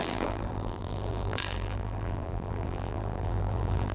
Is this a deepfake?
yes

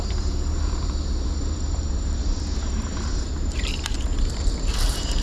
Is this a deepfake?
yes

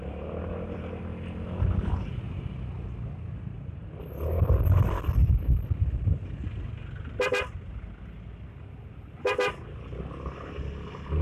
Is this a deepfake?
no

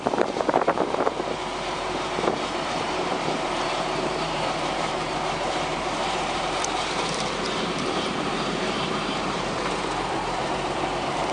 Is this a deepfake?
yes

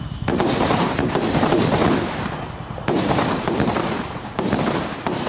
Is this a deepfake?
yes